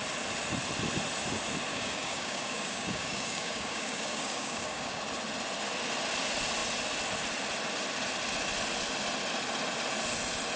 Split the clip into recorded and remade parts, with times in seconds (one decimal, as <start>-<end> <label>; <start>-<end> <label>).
0.0-1.7 recorded; 1.7-5.0 remade; 5.0-10.6 recorded